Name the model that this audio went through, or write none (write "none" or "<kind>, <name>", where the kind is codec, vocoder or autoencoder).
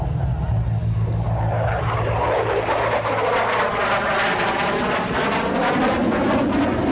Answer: none